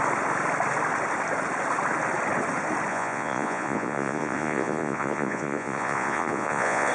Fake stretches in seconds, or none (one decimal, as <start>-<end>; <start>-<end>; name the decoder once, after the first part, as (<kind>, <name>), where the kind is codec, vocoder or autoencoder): 2.9-6.9 (vocoder, Vocos)